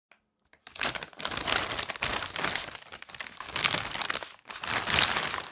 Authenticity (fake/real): real